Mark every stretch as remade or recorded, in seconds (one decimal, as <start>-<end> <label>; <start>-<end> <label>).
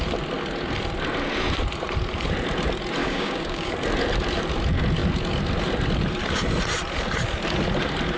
0.0-3.0 recorded; 3.0-3.7 remade; 3.7-8.2 recorded